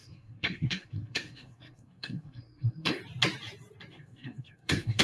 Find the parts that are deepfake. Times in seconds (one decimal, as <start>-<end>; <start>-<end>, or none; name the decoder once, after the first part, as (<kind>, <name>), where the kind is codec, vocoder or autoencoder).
0.0-3.0 (codec, SNAC); 3.9-5.0